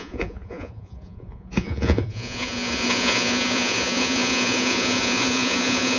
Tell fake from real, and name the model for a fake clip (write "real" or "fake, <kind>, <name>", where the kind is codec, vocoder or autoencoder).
fake, vocoder, Vocos